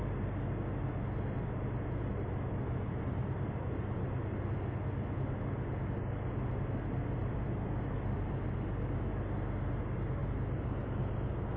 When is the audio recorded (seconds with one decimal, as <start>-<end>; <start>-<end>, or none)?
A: 0.0-7.2; 8.5-10.2; 11.0-11.6